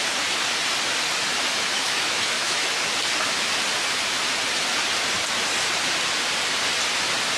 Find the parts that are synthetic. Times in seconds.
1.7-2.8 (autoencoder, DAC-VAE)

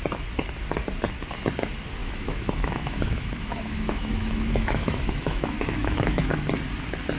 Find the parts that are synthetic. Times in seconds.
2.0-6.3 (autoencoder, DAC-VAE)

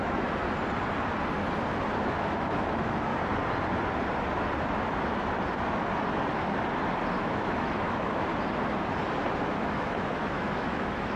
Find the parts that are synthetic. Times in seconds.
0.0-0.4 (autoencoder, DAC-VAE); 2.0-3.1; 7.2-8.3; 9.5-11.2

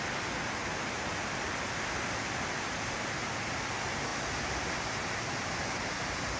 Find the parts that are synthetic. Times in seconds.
none

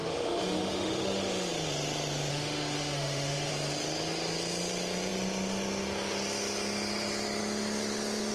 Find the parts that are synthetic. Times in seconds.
0.0-1.5 (autoencoder, DAC-VAE); 2.3-3.5